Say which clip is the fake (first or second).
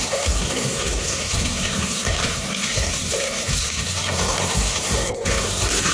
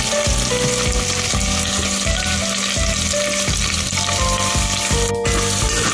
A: first